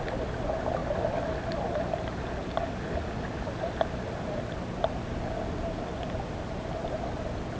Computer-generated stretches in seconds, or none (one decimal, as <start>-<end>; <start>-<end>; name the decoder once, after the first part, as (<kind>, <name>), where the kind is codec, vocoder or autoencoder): none